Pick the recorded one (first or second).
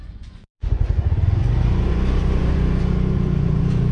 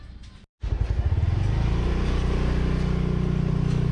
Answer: second